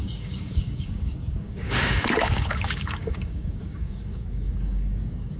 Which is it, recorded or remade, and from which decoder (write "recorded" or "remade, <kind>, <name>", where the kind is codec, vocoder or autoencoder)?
remade, codec, DAC